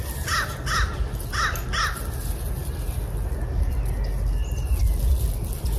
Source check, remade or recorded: recorded